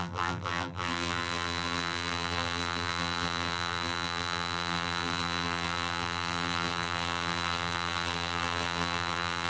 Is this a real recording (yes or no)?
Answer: no